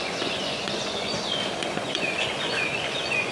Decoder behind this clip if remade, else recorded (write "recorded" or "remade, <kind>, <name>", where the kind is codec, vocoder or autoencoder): remade, vocoder, Vocos